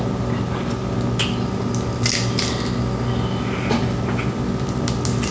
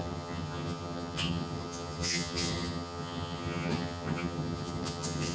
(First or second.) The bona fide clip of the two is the first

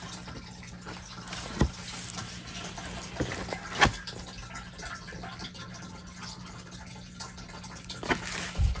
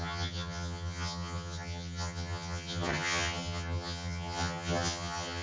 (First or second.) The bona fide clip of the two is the first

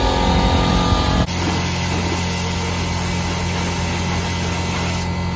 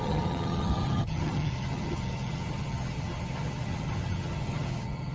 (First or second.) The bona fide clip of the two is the first